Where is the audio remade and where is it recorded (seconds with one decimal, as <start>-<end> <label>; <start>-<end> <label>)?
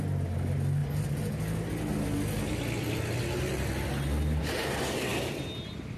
0.0-6.0 recorded